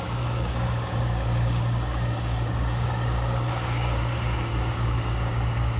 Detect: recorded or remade remade